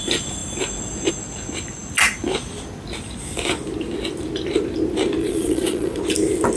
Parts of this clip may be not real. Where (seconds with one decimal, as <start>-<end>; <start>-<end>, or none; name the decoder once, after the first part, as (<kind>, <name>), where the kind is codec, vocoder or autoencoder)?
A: 5.2-6.0 (vocoder, Vocos)

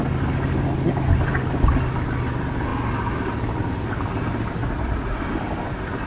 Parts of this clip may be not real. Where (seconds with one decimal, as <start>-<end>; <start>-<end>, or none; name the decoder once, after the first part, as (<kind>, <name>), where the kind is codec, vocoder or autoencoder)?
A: 4.6-5.2 (vocoder, Vocos)

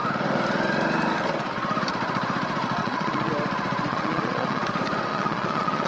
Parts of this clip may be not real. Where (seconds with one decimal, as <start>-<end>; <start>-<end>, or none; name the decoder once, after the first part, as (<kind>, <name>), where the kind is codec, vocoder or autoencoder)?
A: 2.8-3.3 (vocoder, Vocos); 3.9-4.6; 5.1-5.9

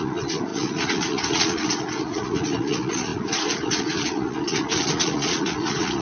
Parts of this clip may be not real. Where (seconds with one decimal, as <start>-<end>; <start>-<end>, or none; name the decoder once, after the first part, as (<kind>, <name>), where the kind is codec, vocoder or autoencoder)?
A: 0.0-6.0 (vocoder, Vocos)